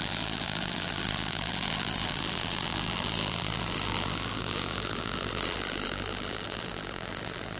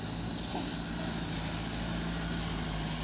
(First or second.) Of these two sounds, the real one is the second